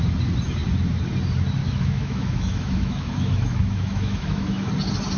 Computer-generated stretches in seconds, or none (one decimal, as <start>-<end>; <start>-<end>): 1.6-4.7